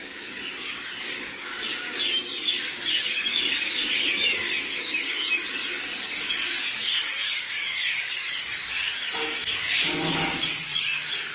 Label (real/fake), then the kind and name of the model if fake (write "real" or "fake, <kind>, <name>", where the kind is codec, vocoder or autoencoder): fake, codec, DAC